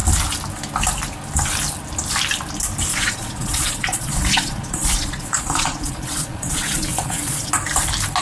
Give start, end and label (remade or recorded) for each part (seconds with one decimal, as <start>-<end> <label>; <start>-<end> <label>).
0.0-2.9 recorded; 2.9-7.5 remade; 7.5-8.2 recorded

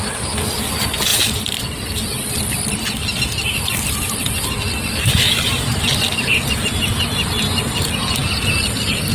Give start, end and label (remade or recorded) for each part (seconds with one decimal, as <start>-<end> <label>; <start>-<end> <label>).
0.0-8.2 recorded; 8.2-9.1 remade

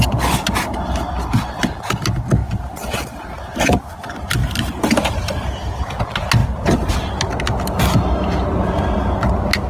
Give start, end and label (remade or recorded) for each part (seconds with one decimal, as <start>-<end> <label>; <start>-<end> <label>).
0.0-2.4 recorded; 2.4-3.4 remade; 3.4-4.4 recorded; 4.4-5.7 remade; 5.7-9.7 recorded

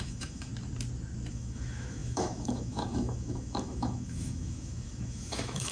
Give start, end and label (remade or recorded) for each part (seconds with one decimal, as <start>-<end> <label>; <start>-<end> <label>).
0.0-0.5 remade; 0.5-1.3 recorded; 1.3-5.7 remade

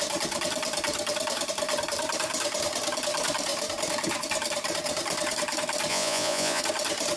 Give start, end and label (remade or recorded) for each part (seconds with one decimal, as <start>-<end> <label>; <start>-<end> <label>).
0.0-5.9 recorded; 5.9-6.6 remade; 6.6-7.2 recorded

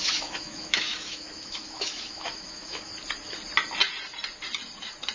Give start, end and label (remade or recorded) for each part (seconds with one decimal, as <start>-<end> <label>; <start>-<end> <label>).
0.0-2.9 remade; 2.9-5.1 recorded

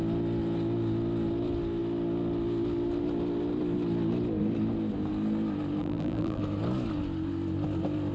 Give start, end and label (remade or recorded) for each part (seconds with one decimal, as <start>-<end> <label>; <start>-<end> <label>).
0.0-5.8 recorded; 5.8-6.4 remade; 6.4-8.1 recorded

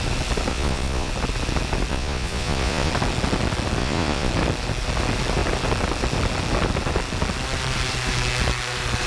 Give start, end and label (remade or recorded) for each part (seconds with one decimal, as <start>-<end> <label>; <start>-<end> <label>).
0.0-0.5 recorded; 0.5-1.1 remade; 1.1-1.9 recorded; 1.9-2.9 remade; 2.9-3.8 recorded; 3.8-4.3 remade; 4.3-9.1 recorded